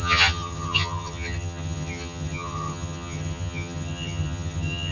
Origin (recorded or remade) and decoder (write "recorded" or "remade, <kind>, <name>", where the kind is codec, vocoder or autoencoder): remade, vocoder, HiFi-GAN